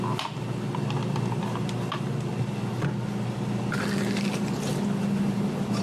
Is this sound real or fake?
real